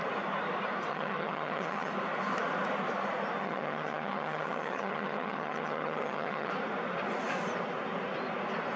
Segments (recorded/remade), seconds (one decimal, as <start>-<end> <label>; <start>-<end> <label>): 0.0-0.9 recorded; 0.9-1.9 remade; 1.9-3.4 recorded; 3.4-6.5 remade; 6.5-8.8 recorded